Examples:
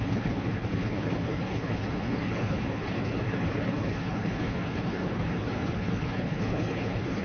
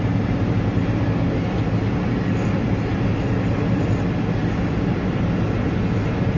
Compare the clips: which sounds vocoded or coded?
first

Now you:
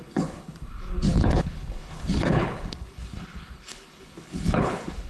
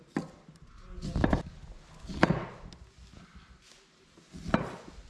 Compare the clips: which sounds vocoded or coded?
first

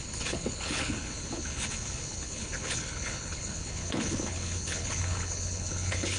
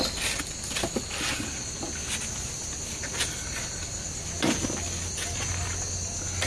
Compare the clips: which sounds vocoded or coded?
first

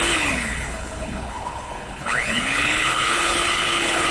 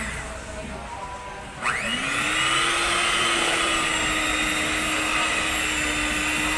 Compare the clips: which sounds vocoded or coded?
first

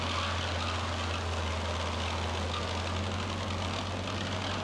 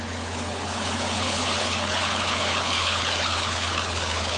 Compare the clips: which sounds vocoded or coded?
second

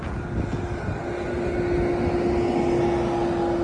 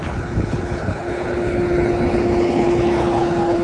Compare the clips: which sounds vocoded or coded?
second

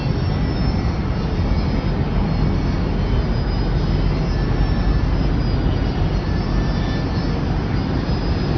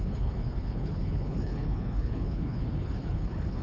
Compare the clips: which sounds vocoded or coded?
second